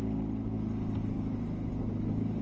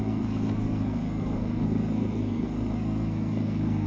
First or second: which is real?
first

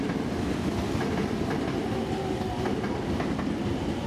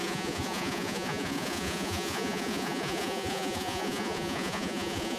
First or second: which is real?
first